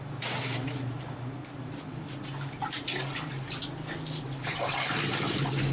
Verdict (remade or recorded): recorded